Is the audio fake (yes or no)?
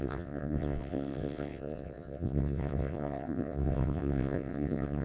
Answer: yes